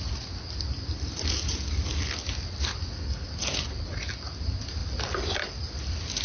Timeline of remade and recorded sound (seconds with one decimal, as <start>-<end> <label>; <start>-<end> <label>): 0.0-4.8 recorded; 4.8-5.8 remade; 5.8-6.2 recorded